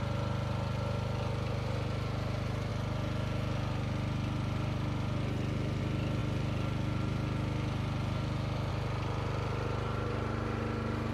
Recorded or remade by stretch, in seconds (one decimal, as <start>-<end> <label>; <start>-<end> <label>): 0.0-11.1 recorded

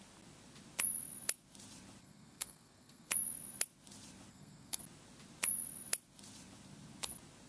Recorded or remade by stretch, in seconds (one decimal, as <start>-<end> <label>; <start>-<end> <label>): 0.0-2.0 recorded; 2.0-3.1 remade; 3.1-4.3 recorded; 4.3-4.8 remade; 4.8-7.5 recorded

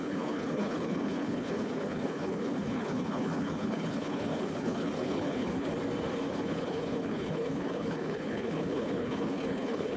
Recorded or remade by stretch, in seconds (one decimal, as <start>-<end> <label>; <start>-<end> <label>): 0.0-5.7 remade; 5.7-6.3 recorded; 6.3-10.0 remade

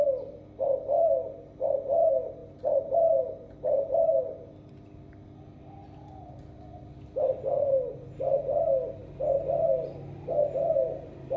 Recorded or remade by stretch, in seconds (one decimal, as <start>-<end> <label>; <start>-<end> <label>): 0.0-11.4 recorded

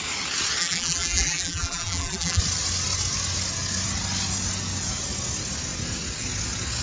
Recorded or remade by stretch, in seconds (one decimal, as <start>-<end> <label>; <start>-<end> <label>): 0.0-0.6 recorded; 0.6-2.4 remade; 2.4-6.8 recorded

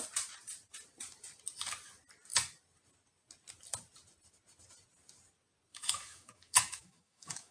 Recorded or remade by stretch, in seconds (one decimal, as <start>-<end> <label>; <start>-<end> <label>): 0.0-5.7 recorded; 5.7-7.5 remade